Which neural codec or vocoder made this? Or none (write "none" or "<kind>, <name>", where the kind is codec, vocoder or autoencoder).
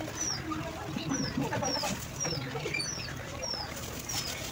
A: none